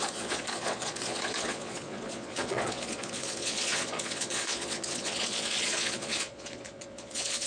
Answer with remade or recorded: remade